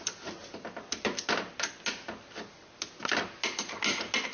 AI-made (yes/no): no